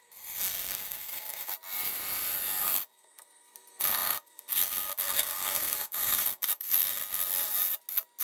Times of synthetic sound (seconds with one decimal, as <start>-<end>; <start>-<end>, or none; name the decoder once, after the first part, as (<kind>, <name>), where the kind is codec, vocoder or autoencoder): 0.0-1.5 (codec, SNAC); 2.6-7.0